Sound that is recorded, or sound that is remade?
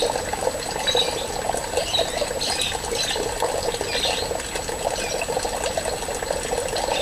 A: recorded